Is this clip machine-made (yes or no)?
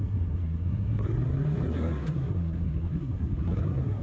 yes